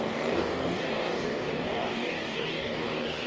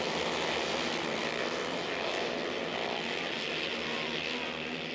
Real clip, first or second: second